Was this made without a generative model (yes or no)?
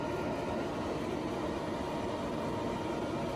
yes